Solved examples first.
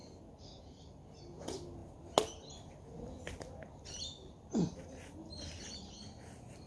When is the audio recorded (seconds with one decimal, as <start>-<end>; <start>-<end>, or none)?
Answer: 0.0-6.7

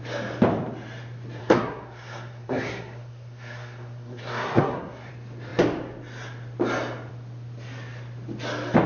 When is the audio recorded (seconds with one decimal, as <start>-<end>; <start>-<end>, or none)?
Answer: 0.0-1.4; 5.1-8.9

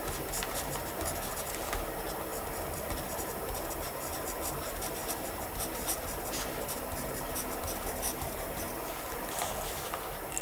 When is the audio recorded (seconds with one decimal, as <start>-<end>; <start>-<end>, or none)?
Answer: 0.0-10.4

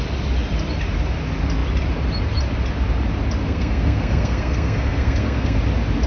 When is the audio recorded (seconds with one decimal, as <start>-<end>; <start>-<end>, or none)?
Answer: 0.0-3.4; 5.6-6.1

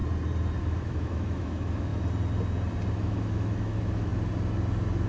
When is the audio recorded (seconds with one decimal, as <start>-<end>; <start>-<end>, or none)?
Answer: 0.0-0.6; 1.9-2.9; 4.1-5.1

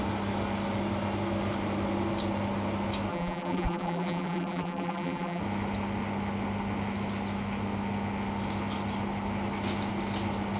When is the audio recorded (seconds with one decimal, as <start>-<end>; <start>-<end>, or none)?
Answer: 0.0-3.1; 5.4-10.6